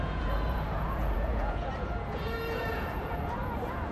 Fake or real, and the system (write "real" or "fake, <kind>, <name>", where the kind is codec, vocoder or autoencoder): fake, vocoder, Vocos